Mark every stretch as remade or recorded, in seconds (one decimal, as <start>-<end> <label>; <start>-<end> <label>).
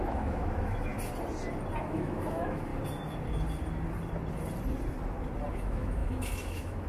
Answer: 0.0-0.9 remade; 0.9-1.8 recorded; 1.8-2.7 remade; 2.7-5.5 recorded; 5.5-6.9 remade